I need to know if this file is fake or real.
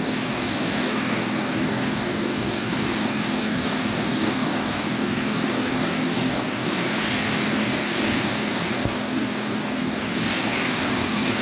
fake